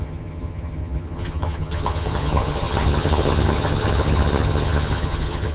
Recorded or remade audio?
remade